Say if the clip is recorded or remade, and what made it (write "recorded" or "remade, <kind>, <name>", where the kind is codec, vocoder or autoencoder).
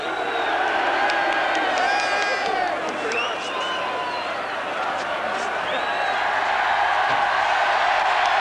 recorded